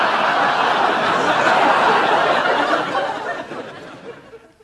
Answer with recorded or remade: recorded